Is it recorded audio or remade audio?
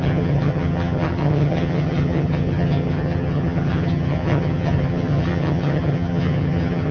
remade